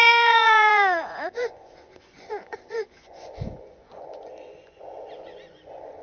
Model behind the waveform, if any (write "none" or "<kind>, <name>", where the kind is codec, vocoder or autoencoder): vocoder, Vocos